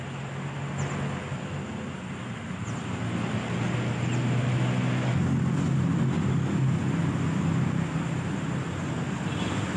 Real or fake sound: real